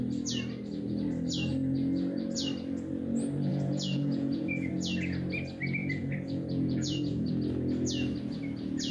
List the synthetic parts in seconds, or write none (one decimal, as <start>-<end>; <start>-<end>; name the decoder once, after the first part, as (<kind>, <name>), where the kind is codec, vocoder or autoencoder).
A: 3.5-4.7 (vocoder, Vocos); 5.8-7.3

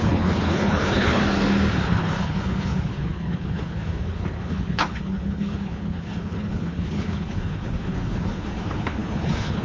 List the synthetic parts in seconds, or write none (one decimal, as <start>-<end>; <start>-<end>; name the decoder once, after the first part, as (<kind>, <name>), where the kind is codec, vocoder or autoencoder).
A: 0.0-1.2 (codec, HILCodec); 1.7-9.6

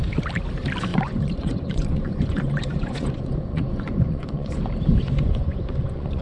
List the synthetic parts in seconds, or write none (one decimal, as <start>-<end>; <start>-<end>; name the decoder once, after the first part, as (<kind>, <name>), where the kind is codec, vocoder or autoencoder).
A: 0.9-4.6 (vocoder, Vocos); 5.0-6.2

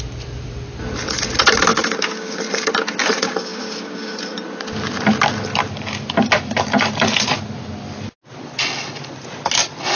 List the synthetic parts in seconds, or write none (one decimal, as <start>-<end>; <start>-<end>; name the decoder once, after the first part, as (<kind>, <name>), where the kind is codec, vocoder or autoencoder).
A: 1.7-2.4 (codec, DAC); 3.0-4.1

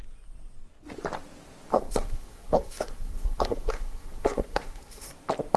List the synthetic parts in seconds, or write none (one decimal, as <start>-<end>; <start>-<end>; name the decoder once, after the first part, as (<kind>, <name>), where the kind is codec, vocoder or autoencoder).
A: 1.7-5.1 (codec, SNAC)

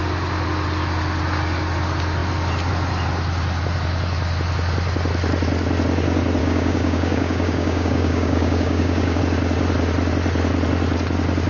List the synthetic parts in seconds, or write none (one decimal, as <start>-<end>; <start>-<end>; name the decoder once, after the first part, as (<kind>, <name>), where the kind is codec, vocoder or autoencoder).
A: 6.4-9.2 (codec, DAC)

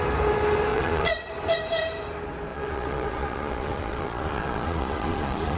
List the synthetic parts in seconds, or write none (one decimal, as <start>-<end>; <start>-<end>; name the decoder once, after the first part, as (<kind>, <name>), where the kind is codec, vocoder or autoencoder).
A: 0.7-1.3 (vocoder, Vocos); 2.5-5.6

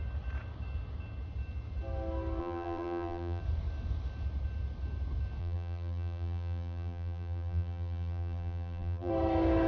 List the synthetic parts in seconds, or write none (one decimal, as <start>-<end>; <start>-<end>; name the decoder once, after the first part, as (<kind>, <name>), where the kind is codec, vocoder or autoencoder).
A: 2.4-3.4 (vocoder, BigVGAN v2); 5.4-9.1